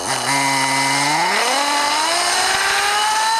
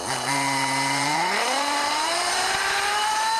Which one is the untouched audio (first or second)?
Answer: first